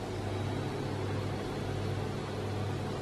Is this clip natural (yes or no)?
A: yes